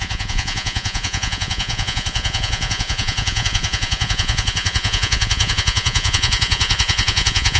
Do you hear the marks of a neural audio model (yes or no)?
yes